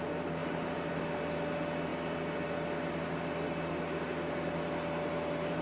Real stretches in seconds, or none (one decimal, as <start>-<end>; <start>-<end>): 0.0-5.6